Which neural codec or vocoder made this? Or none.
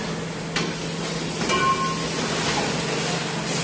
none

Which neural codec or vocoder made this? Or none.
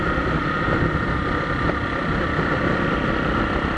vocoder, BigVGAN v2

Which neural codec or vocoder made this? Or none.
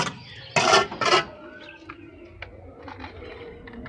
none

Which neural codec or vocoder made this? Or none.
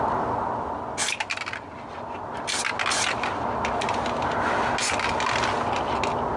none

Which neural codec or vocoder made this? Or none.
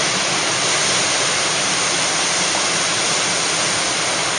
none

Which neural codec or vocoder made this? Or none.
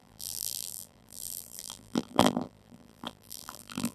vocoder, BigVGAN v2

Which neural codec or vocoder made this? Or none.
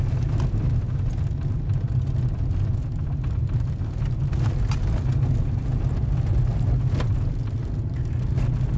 none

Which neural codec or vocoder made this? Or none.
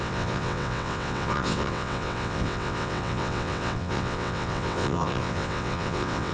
vocoder, WaveNeXt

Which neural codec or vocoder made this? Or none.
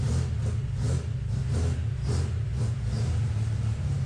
none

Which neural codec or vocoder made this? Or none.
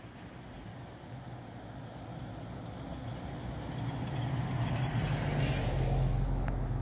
none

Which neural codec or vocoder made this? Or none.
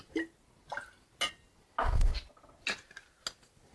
none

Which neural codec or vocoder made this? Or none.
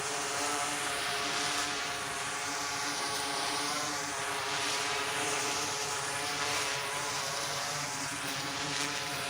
vocoder, BigVGAN v2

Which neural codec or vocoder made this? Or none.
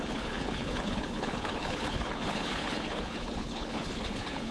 codec, HILCodec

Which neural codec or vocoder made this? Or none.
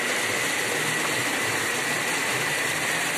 none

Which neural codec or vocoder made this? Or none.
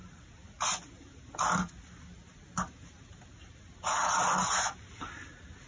none